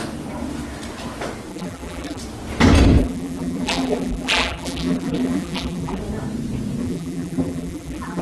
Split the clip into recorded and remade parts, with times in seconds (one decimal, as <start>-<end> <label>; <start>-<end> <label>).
0.0-1.5 recorded; 1.5-2.2 remade; 2.2-3.0 recorded; 3.0-6.0 remade; 6.0-6.8 recorded; 6.8-8.2 remade